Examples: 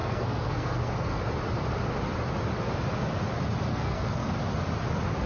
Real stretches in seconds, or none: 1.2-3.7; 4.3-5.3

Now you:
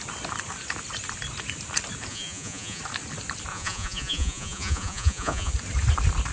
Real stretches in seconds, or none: 0.0-2.1; 2.8-3.5; 5.5-6.3

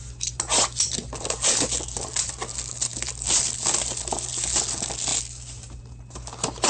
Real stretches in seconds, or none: 0.0-6.7

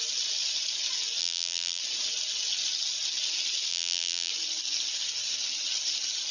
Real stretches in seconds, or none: 0.0-1.2; 1.8-3.7; 4.3-6.3

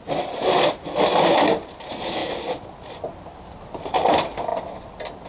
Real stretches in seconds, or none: 0.0-5.3

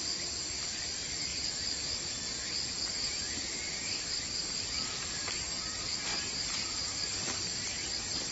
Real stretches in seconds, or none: 0.0-6.1; 6.9-8.3

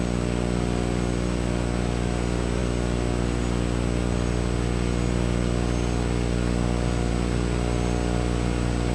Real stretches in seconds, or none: 0.0-8.9